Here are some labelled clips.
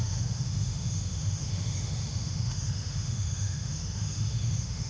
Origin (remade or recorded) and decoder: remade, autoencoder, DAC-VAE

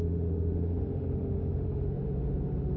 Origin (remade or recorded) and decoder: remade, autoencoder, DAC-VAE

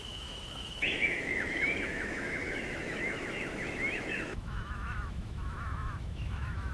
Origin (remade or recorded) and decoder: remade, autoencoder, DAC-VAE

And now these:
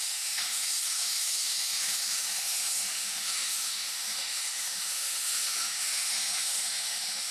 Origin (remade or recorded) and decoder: remade, autoencoder, DAC-VAE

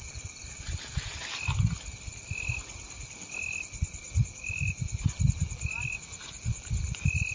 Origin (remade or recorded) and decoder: recorded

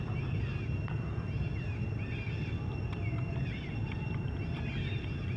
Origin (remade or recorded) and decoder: recorded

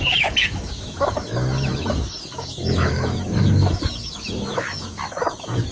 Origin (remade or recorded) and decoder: remade, autoencoder, DAC-VAE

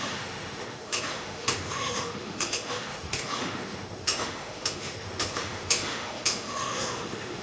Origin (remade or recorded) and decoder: remade, autoencoder, DAC-VAE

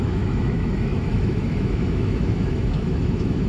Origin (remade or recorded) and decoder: remade, autoencoder, DAC-VAE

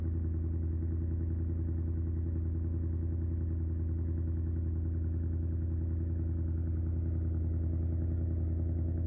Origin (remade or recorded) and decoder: recorded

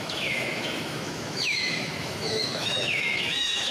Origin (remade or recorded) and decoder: remade, autoencoder, DAC-VAE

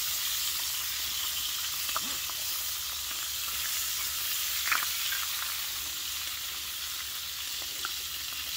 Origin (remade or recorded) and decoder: recorded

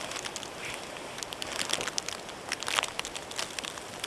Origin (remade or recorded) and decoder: recorded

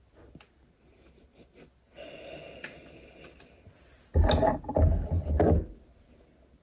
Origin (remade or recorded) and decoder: recorded